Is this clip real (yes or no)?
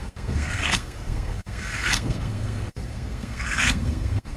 no